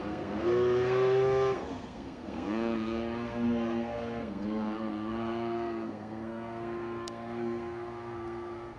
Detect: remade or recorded remade